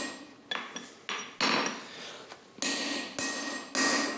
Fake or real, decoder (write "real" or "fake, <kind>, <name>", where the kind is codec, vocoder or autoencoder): real